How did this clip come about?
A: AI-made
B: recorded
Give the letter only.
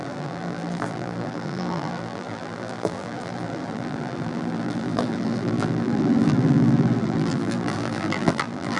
A